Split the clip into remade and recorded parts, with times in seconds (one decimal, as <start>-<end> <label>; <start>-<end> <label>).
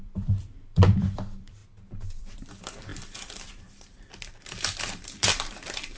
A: 0.0-1.6 remade; 1.6-2.2 recorded; 2.2-6.0 remade